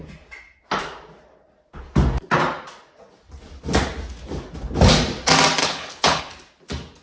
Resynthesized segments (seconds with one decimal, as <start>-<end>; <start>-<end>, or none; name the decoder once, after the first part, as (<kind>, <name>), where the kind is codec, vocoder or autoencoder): 5.6-6.2 (codec, HILCodec)